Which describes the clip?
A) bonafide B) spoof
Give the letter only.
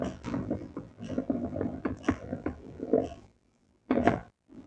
B